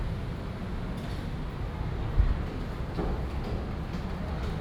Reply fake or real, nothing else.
real